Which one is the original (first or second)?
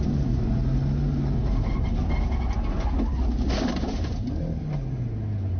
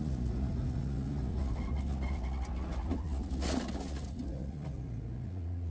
first